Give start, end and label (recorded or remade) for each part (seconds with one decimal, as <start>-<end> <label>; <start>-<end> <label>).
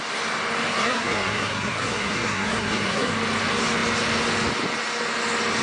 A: 0.0-0.7 recorded; 0.7-3.1 remade; 3.1-5.6 recorded